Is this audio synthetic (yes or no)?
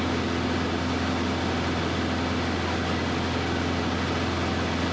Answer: no